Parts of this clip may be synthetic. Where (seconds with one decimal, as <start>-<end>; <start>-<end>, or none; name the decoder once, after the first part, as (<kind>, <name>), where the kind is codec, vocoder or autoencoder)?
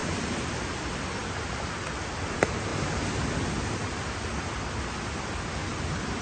0.5-2.7 (vocoder, BigVGAN v2); 5.2-6.2